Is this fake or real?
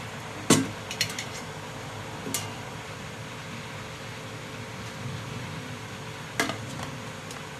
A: real